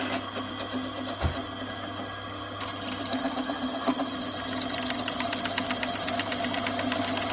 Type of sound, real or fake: real